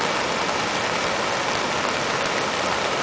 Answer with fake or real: real